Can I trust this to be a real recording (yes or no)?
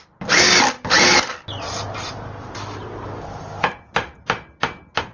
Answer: yes